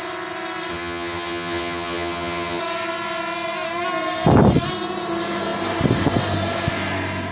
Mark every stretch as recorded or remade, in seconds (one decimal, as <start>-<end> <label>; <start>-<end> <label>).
0.0-0.7 recorded; 0.7-2.6 remade; 2.6-7.3 recorded